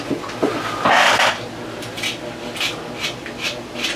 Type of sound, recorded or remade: recorded